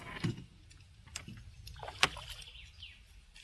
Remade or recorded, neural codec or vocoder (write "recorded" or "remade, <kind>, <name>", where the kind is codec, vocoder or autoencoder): recorded